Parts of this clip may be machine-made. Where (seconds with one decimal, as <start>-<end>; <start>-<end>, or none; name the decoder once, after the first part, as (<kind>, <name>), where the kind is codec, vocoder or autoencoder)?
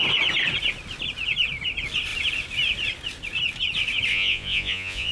4.1-5.1 (vocoder, Vocos)